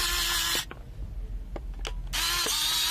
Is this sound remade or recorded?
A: recorded